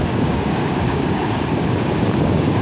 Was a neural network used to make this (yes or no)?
yes